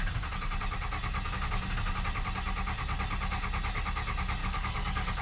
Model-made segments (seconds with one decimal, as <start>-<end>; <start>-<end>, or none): 4.4-5.2